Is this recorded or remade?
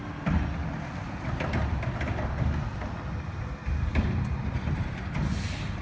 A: recorded